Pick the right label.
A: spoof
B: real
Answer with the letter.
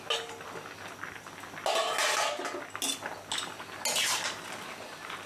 B